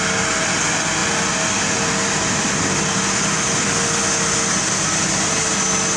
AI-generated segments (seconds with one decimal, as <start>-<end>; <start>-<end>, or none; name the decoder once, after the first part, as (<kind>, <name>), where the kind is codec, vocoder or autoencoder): none